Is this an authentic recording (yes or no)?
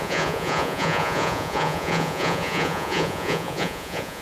no